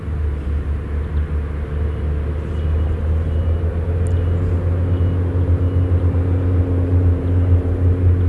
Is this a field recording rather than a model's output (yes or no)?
yes